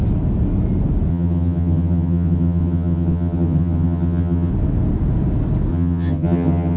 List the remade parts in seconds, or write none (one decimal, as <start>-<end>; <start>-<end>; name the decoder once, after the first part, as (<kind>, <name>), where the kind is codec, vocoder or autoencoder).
1.1-4.5 (vocoder, HiFi-GAN); 5.7-6.8